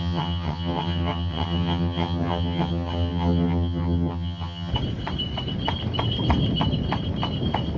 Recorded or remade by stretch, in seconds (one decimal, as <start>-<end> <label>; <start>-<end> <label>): 0.0-4.7 remade; 4.7-7.8 recorded